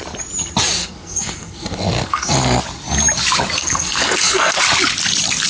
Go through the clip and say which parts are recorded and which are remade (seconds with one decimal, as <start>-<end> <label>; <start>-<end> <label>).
0.0-0.8 recorded; 0.8-2.6 remade; 2.6-3.6 recorded; 3.6-4.6 remade; 4.6-5.5 recorded

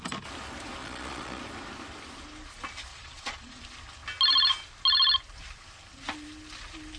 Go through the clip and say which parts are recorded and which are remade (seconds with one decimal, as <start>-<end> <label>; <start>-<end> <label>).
0.0-0.8 recorded; 0.8-1.4 remade; 1.4-2.9 recorded; 2.9-3.6 remade; 3.6-7.0 recorded

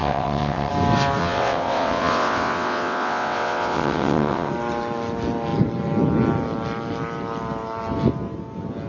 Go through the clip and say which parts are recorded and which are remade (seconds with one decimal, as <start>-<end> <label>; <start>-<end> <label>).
0.0-0.7 remade; 0.7-1.2 recorded; 1.2-4.5 remade; 4.5-8.9 recorded

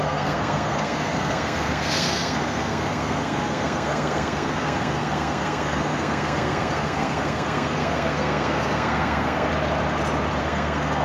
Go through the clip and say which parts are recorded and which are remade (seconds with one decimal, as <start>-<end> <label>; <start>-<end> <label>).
0.0-9.5 remade; 9.5-10.4 recorded; 10.4-11.0 remade

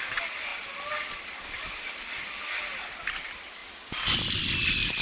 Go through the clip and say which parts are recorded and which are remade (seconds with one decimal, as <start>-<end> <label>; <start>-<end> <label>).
0.0-5.0 recorded

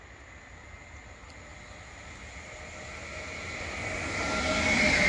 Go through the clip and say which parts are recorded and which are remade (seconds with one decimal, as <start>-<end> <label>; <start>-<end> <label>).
0.0-5.1 recorded

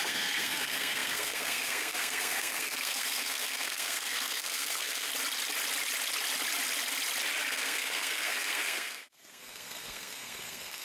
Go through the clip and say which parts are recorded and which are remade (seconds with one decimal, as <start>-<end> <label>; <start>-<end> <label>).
0.0-5.1 remade; 5.1-7.5 recorded; 7.5-10.8 remade

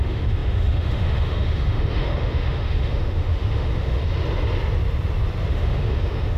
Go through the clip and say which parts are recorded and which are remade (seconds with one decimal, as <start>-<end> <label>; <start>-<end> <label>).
0.0-4.0 remade; 4.0-5.5 recorded; 5.5-6.4 remade